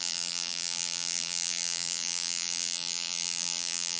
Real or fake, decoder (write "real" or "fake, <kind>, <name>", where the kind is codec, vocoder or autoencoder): fake, vocoder, BigVGAN v2